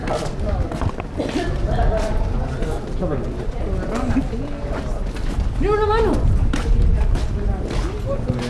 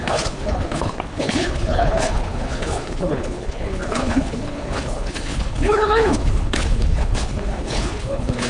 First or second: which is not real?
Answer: second